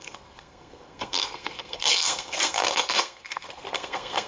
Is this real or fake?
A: fake